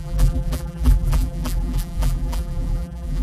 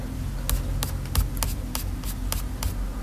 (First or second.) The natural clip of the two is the second